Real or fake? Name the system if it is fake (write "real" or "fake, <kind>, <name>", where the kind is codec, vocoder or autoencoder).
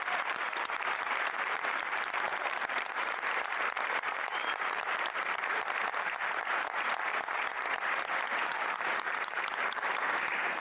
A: fake, vocoder, BigVGAN v2